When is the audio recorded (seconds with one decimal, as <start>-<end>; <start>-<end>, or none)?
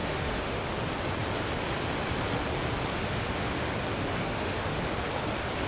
0.6-2.9; 3.7-4.2; 4.8-5.7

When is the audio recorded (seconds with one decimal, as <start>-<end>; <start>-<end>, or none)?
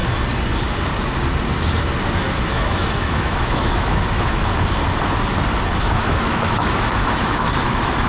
0.0-2.4; 4.5-5.8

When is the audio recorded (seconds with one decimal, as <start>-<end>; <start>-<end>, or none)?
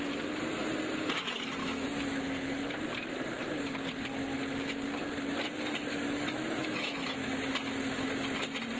0.0-1.6; 2.6-5.9; 7.5-8.8